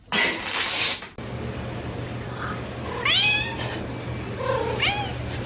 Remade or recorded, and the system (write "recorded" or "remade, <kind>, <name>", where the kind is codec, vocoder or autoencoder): recorded